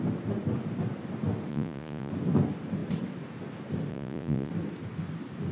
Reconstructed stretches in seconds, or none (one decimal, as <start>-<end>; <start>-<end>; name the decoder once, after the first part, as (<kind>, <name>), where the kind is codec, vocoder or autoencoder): 1.5-2.1 (vocoder, Vocos); 3.9-4.5